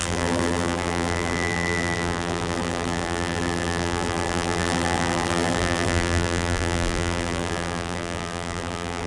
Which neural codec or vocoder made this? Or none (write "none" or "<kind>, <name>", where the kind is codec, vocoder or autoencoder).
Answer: vocoder, BigVGAN v2